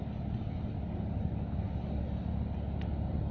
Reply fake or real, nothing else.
real